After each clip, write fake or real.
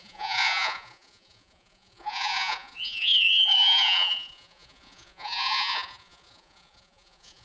fake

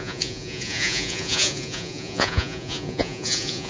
fake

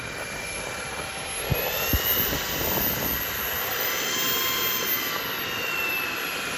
real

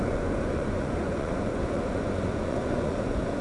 fake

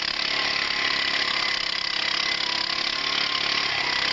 real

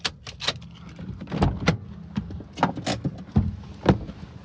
real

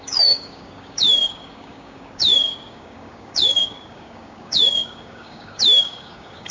fake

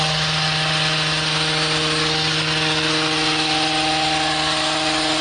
real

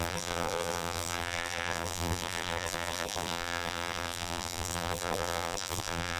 fake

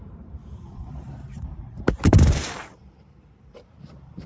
fake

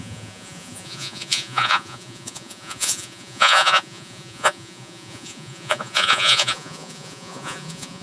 fake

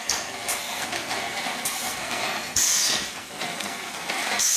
fake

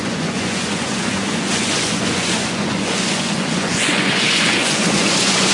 fake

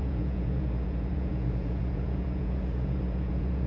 fake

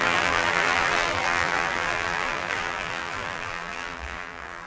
fake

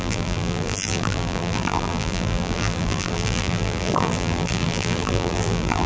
fake